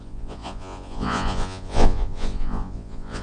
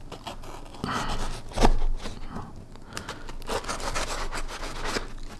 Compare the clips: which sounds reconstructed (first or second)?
first